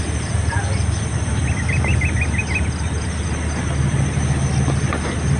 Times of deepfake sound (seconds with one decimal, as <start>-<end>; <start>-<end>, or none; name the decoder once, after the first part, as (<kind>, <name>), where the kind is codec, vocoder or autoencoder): none